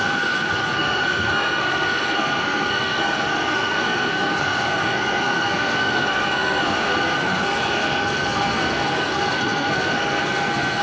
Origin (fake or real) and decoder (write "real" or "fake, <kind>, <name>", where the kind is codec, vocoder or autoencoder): fake, codec, SNAC